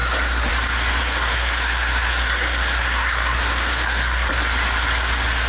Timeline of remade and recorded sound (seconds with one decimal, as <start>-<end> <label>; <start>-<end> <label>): 0.0-0.5 remade; 0.5-1.0 recorded; 1.0-4.3 remade; 4.3-5.5 recorded